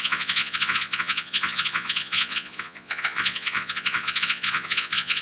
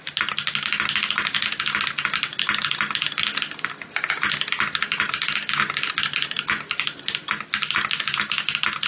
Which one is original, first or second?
second